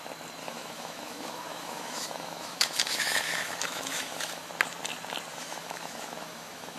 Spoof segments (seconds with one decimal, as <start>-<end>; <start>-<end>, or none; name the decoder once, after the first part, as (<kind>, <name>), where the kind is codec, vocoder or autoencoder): 0.4-4.5 (autoencoder, DAC-VAE); 5.3-6.8